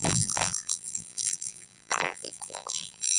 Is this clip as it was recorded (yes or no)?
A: no